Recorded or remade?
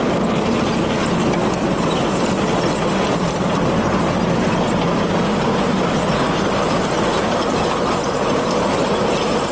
recorded